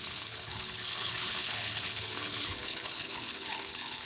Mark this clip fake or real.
fake